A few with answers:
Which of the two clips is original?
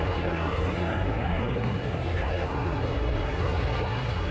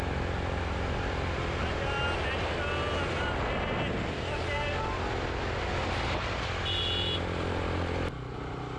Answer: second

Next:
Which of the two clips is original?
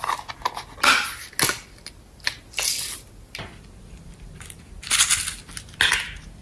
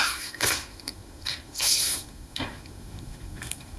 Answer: first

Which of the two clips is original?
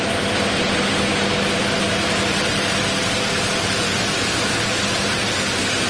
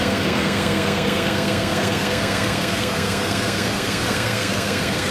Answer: first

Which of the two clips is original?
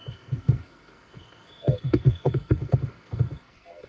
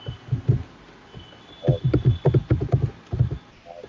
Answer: second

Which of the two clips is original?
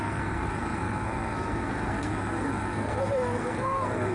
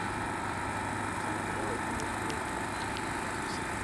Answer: second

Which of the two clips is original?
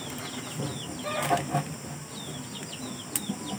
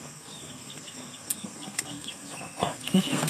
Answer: first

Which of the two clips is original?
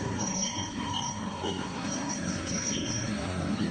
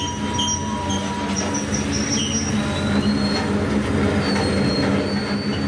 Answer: second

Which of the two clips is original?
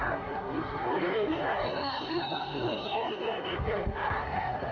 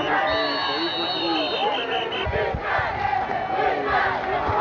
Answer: second